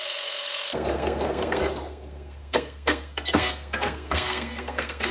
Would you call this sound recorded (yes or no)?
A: no